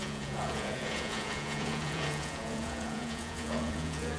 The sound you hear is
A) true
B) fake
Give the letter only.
B